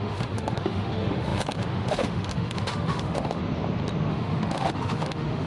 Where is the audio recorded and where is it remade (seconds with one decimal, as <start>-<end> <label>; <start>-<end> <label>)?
0.0-3.4 remade; 3.4-4.1 recorded; 4.1-5.5 remade